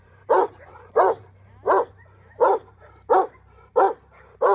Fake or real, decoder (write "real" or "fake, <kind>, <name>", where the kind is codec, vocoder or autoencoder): fake, vocoder, BigVGAN v2